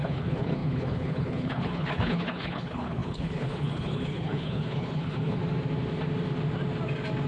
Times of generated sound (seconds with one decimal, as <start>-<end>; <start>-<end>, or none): 0.0-5.4